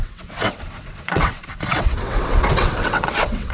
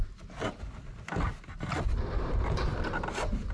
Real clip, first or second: second